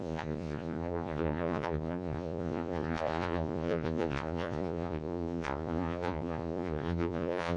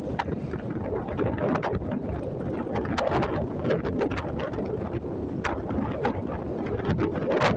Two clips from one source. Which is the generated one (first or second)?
first